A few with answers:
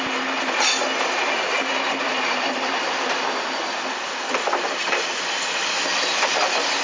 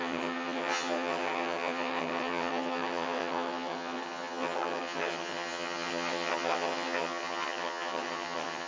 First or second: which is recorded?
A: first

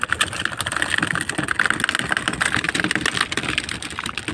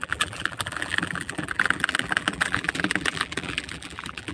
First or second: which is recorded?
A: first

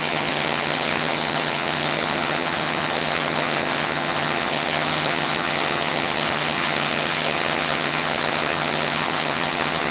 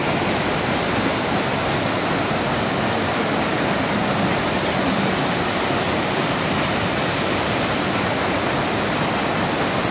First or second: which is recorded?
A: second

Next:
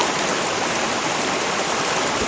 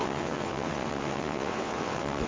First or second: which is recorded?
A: first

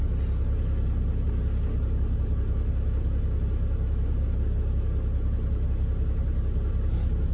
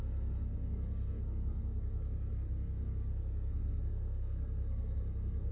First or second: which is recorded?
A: first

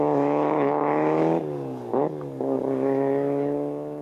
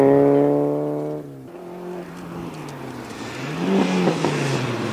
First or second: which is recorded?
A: second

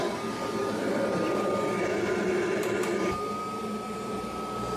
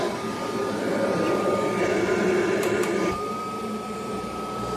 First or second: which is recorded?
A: first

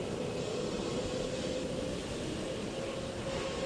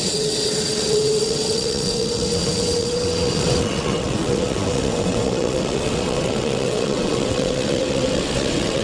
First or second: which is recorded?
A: first